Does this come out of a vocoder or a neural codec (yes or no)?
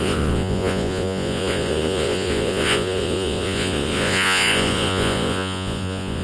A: yes